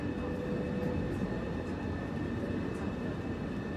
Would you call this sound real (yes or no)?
yes